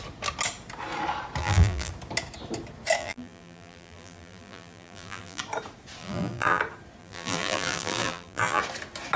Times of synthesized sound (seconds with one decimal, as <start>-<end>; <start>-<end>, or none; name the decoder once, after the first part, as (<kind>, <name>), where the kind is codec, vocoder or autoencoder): 1.4-1.9 (vocoder, BigVGAN v2); 3.0-5.4; 6.0-6.6; 7.0-8.6